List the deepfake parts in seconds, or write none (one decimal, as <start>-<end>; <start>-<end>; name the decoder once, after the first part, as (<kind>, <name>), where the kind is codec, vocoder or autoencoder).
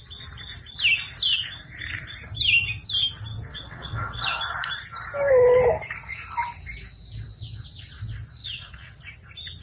3.5-4.4 (vocoder, WaveNeXt); 8.4-9.0